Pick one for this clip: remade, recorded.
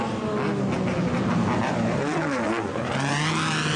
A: recorded